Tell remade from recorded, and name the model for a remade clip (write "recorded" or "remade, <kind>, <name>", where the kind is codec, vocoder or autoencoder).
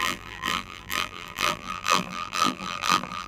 remade, vocoder, BigVGAN v2